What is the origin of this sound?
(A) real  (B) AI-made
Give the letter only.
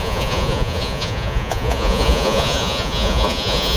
B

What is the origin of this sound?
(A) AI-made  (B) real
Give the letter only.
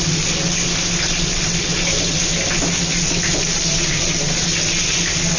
B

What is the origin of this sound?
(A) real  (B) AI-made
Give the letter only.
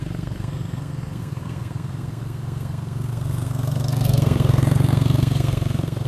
B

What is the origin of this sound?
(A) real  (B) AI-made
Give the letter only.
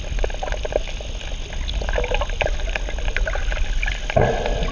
A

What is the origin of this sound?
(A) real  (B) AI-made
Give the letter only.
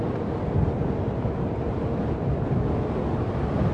A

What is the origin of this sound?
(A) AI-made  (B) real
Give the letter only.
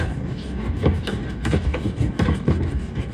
A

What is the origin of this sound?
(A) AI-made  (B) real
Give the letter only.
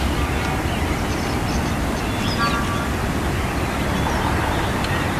B